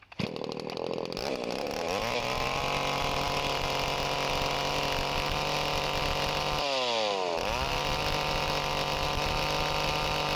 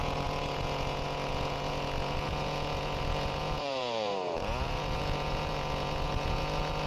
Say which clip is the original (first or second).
first